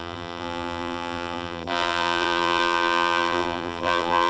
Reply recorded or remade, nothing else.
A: remade